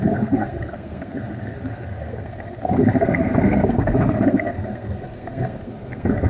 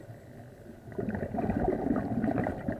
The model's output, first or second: first